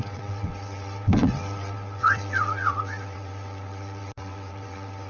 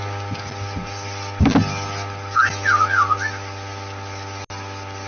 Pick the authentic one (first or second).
second